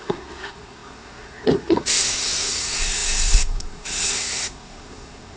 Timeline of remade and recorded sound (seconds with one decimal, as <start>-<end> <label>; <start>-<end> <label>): 0.0-5.4 remade